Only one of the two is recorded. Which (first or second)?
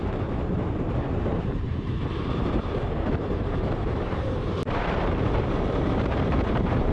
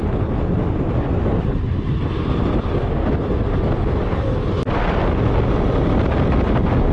second